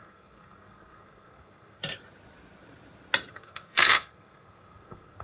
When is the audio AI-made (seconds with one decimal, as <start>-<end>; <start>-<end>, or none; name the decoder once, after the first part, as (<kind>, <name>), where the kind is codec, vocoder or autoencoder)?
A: 0.0-1.8 (codec, SNAC); 3.3-5.2